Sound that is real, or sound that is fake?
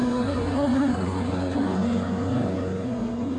fake